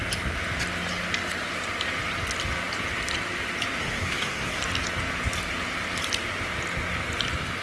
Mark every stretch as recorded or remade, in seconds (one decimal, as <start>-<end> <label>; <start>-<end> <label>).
0.0-3.8 recorded; 3.8-4.6 remade; 4.6-7.6 recorded